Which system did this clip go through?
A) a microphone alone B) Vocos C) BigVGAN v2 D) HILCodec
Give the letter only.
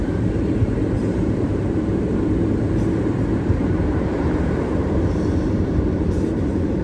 C